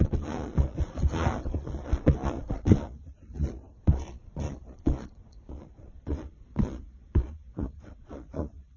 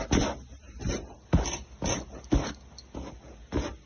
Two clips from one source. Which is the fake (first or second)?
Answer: first